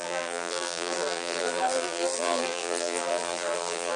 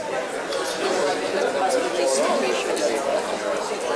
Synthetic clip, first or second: first